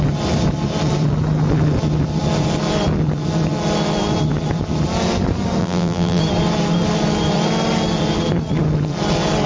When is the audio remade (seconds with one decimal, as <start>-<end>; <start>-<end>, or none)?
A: 5.6-6.2